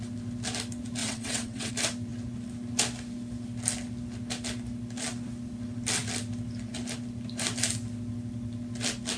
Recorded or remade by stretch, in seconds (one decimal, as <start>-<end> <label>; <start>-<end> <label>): 0.0-1.0 recorded; 1.0-1.7 remade; 1.7-9.2 recorded